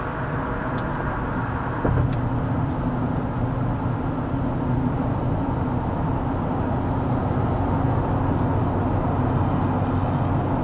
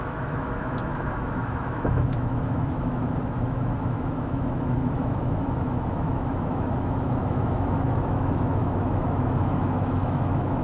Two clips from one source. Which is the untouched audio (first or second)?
first